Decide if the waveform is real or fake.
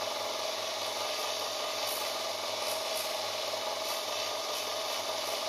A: real